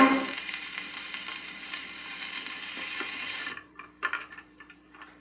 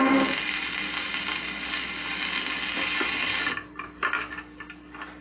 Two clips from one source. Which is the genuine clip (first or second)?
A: second